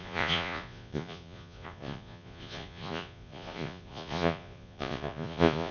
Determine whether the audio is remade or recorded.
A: remade